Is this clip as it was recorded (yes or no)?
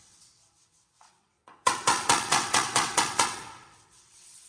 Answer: no